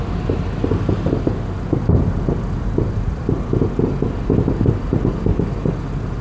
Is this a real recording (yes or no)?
yes